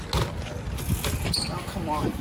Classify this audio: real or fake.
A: real